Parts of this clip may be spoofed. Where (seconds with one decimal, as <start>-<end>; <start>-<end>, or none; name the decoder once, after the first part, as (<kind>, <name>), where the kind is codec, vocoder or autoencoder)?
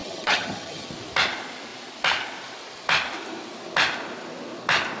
0.0-0.9 (vocoder, HiFi-GAN)